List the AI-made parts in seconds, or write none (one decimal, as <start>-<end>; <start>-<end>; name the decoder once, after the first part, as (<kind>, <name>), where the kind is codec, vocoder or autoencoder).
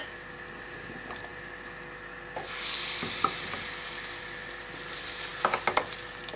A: none